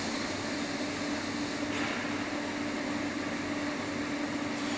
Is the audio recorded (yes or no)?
yes